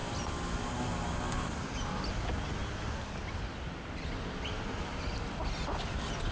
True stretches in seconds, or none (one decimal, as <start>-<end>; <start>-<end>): 0.0-6.3